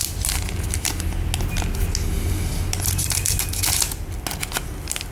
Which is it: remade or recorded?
recorded